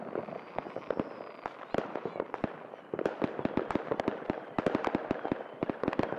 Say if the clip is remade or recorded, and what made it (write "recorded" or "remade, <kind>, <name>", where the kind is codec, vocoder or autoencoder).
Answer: remade, vocoder, BigVGAN v2